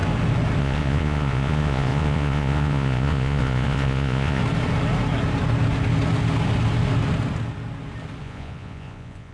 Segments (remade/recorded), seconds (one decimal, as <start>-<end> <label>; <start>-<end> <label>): 0.0-0.6 recorded; 0.6-4.4 remade; 4.4-8.2 recorded; 8.2-9.3 remade